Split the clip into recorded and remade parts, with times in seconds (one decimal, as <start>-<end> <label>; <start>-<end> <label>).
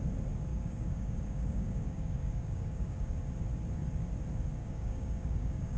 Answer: 0.0-0.5 recorded; 0.5-3.1 remade; 3.1-4.6 recorded; 4.6-5.8 remade